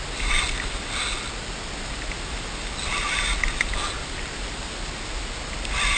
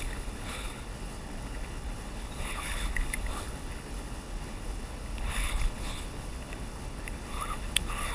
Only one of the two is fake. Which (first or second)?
second